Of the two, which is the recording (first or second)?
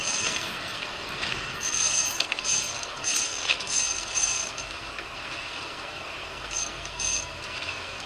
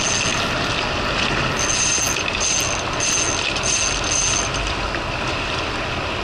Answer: second